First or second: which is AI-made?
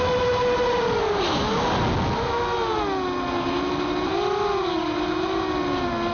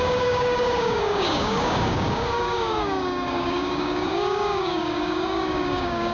second